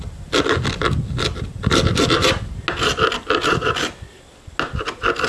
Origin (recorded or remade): recorded